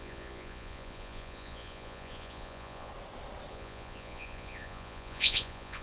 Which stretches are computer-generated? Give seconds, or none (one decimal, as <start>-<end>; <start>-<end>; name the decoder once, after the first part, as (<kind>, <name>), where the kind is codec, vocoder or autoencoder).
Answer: 0.0-2.9 (vocoder, Vocos); 3.5-5.8